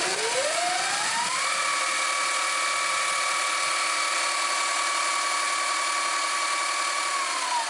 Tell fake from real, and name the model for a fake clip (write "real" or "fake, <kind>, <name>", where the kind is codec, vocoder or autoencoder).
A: real